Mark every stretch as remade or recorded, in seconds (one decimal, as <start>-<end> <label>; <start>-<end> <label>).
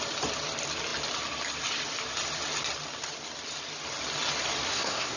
0.0-4.7 recorded; 4.7-5.2 remade